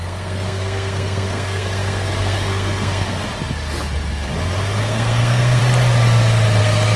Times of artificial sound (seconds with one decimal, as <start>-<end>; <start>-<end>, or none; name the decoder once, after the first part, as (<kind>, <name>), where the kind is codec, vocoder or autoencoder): 0.0-3.2 (codec, SNAC); 4.8-5.6; 6.6-7.0